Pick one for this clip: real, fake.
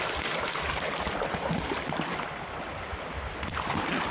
real